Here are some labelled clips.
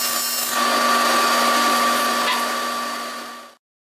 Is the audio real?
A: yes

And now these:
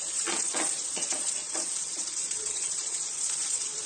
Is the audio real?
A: no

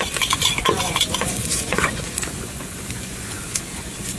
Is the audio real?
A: no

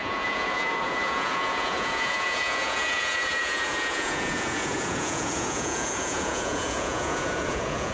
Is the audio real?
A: no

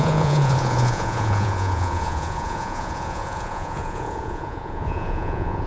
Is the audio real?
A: no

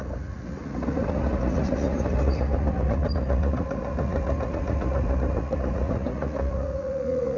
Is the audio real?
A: no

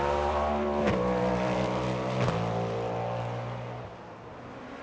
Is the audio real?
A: yes